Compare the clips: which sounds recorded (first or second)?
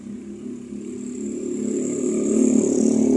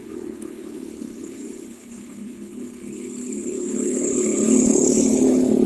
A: first